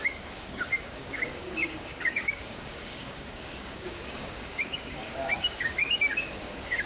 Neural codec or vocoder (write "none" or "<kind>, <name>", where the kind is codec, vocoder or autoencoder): codec, DAC